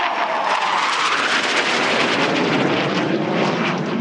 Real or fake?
real